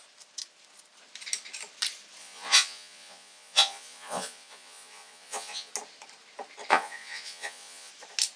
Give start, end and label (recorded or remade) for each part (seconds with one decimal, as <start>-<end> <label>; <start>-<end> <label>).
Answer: 0.0-2.2 recorded; 2.2-5.7 remade; 5.7-6.7 recorded; 6.7-7.9 remade; 7.9-8.4 recorded